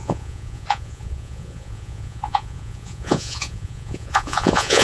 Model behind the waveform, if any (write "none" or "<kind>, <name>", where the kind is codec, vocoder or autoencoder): vocoder, Vocos